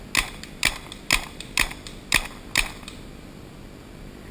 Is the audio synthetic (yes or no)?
no